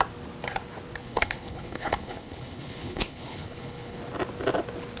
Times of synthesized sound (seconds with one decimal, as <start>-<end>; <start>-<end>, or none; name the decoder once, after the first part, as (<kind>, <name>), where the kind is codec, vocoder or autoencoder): 1.0-4.0 (codec, HILCodec)